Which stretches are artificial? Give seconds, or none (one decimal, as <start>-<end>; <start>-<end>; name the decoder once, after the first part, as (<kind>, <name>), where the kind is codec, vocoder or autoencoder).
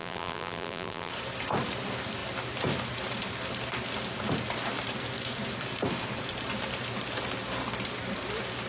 0.0-1.1 (vocoder, BigVGAN v2)